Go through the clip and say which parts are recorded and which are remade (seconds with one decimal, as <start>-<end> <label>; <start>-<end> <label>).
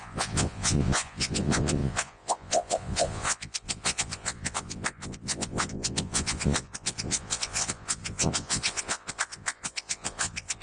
0.0-10.6 remade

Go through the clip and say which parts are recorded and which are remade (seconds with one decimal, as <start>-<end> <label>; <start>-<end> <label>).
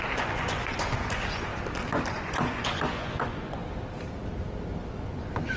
0.0-1.5 remade; 1.5-2.1 recorded; 2.1-3.6 remade; 3.6-4.9 recorded; 4.9-5.6 remade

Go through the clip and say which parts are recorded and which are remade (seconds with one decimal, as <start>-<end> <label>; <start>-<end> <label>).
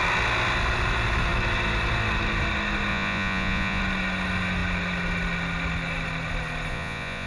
0.0-2.9 recorded; 2.9-3.8 remade; 3.8-6.7 recorded; 6.7-7.3 remade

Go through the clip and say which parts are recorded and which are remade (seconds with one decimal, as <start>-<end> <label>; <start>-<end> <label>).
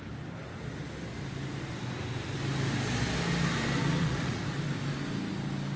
0.0-3.9 recorded; 3.9-4.4 remade; 4.4-5.8 recorded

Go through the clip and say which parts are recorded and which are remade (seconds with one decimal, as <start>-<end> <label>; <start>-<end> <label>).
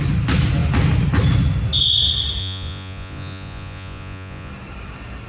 0.0-2.4 recorded; 2.4-4.5 remade; 4.5-5.3 recorded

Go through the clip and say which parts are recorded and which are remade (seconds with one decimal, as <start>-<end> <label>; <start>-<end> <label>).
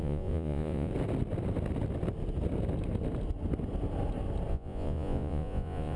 0.0-0.9 remade; 0.9-4.5 recorded; 4.5-6.0 remade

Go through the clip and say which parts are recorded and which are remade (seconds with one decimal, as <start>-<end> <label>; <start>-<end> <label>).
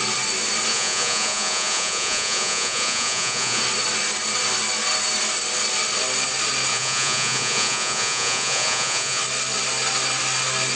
0.0-0.7 recorded; 0.7-3.6 remade; 3.6-6.7 recorded; 6.7-9.2 remade; 9.2-10.8 recorded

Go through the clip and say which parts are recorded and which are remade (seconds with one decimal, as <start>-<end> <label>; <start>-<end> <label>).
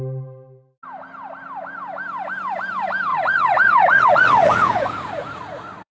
0.0-3.1 recorded; 3.1-6.0 remade